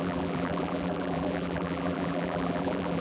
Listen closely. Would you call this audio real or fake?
fake